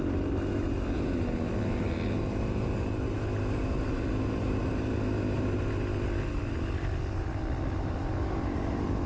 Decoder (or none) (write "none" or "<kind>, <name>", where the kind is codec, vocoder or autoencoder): none